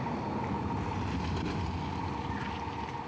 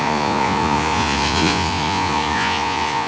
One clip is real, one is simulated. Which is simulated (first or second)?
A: second